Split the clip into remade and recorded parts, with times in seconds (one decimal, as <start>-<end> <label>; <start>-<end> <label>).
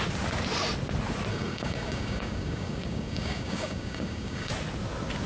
0.0-1.3 recorded; 1.3-4.5 remade; 4.5-5.3 recorded